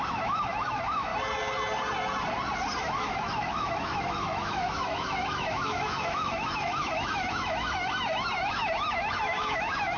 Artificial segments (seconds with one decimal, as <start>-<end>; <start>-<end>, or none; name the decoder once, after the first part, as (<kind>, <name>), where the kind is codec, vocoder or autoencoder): 0.0-1.1 (autoencoder, DAC-VAE); 2.8-10.0